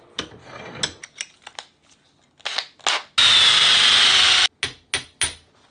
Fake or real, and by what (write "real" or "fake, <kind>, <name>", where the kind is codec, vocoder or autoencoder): real